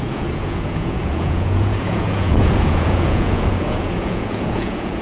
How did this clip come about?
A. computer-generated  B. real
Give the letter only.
A